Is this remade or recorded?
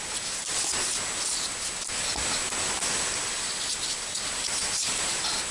recorded